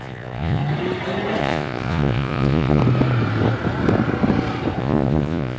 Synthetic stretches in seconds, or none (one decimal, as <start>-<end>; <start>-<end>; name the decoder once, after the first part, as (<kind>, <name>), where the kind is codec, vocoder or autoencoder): 0.0-0.6 (vocoder, Vocos); 1.4-2.8; 4.8-5.6